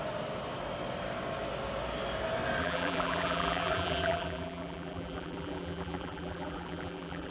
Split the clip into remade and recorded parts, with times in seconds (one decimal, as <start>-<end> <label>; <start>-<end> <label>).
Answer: 0.0-2.6 recorded; 2.6-7.3 remade